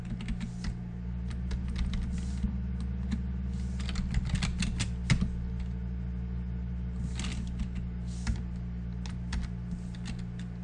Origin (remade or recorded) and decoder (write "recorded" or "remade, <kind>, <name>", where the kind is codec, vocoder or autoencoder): recorded